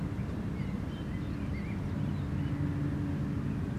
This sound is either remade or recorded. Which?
recorded